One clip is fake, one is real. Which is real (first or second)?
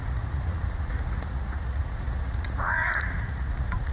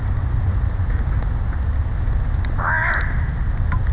second